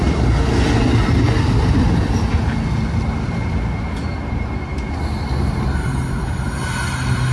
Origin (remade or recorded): recorded